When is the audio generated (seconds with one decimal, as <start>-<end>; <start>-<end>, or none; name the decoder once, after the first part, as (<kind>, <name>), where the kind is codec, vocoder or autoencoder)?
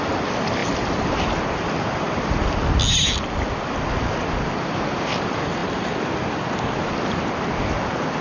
none